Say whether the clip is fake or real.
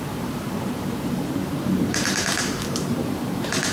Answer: fake